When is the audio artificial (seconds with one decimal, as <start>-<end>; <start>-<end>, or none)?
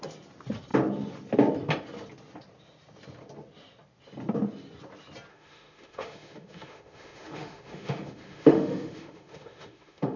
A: 5.3-10.2